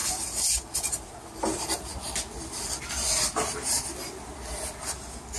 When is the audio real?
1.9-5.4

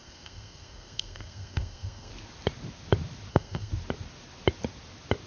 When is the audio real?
2.1-3.3; 3.7-5.3

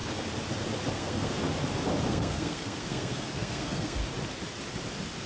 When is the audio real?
0.0-0.9; 1.4-2.1; 4.0-5.3

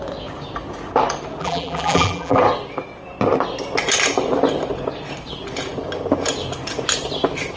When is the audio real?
0.0-1.4; 2.4-7.6

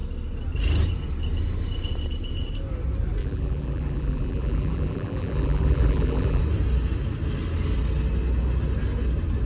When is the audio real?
0.0-3.2; 6.4-9.5

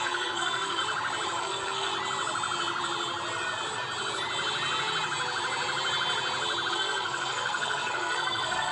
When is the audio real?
0.8-1.4; 1.9-6.7